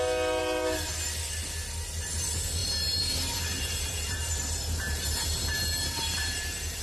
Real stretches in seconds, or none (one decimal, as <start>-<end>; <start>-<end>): 0.0-0.4; 0.9-2.6